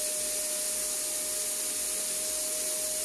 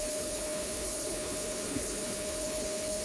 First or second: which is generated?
second